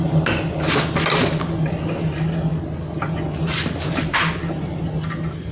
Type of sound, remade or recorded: recorded